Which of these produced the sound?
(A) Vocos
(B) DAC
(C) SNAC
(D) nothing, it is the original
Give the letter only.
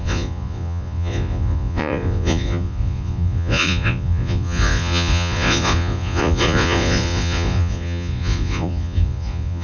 A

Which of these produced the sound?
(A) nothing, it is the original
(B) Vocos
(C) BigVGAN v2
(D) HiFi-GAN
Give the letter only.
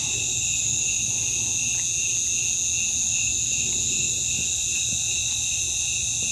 A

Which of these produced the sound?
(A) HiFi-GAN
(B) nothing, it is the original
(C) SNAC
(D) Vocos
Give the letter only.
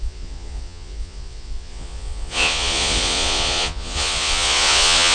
D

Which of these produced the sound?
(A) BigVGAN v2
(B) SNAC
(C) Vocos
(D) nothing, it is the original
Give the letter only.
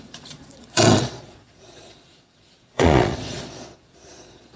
C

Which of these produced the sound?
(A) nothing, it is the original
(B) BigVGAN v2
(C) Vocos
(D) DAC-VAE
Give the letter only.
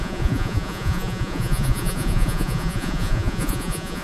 C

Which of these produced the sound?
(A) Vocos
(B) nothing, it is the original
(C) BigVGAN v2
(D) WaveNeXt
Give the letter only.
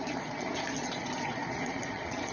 A